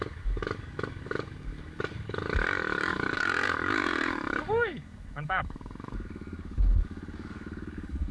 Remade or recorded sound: remade